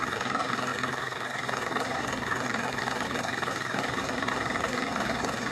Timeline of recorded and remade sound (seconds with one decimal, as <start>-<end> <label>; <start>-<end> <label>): 0.0-5.5 remade